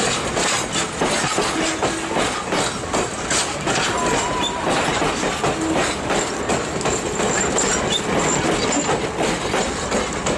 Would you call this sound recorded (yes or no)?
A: yes